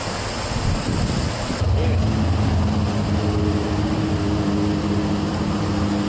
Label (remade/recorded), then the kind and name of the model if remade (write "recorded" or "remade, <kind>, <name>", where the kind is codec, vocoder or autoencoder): recorded